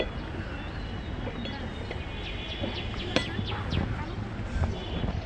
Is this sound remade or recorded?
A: recorded